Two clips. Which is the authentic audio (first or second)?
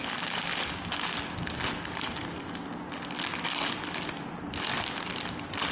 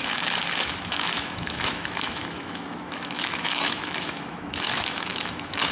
first